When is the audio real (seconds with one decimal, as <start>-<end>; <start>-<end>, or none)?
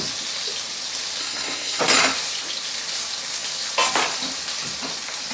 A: 0.0-1.2; 1.8-5.3